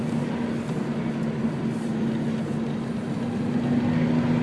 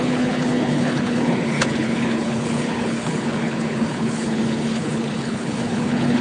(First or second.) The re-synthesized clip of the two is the second